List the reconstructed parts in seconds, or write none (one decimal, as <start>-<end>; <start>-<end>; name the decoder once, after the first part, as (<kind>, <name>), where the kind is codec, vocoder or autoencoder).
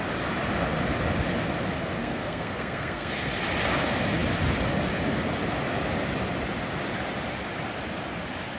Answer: 2.0-3.1 (codec, SNAC)